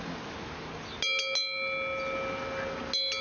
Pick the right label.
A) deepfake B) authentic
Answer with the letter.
B